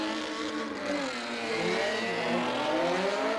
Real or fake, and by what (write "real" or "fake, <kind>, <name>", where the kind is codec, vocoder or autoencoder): real